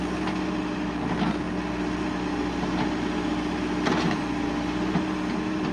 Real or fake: real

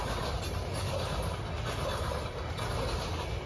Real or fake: real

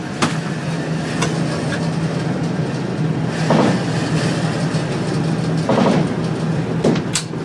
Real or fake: real